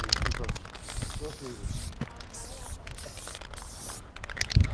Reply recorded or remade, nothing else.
recorded